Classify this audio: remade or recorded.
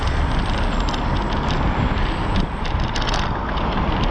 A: recorded